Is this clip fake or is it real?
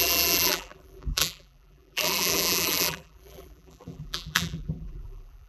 fake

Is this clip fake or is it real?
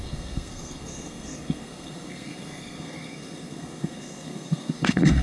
fake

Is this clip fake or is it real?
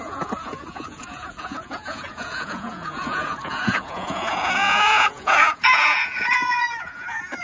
fake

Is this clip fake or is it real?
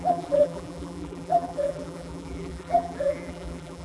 fake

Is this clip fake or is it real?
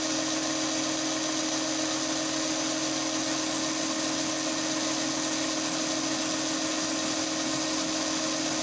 real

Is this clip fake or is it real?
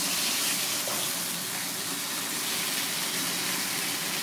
real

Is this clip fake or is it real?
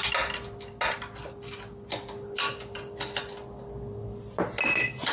real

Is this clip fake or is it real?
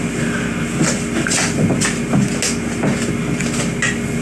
real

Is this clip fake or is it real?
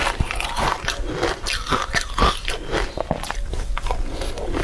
real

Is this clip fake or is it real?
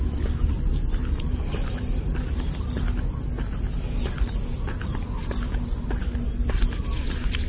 real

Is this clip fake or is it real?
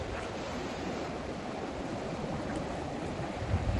fake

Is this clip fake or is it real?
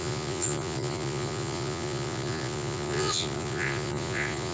fake